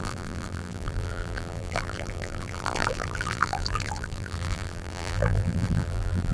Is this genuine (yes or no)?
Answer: no